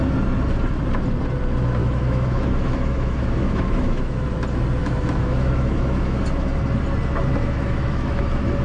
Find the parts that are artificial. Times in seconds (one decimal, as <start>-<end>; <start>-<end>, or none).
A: 1.8-4.3; 4.8-6.2; 7.4-8.2